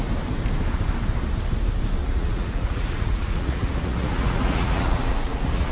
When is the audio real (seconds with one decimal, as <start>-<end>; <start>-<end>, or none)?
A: 0.0-2.0